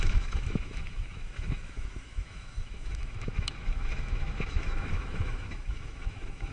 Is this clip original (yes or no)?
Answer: no